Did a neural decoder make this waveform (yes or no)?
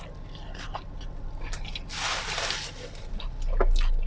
no